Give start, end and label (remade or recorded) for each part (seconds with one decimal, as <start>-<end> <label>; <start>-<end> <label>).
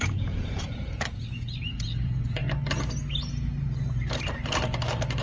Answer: 0.0-2.4 remade; 2.4-5.2 recorded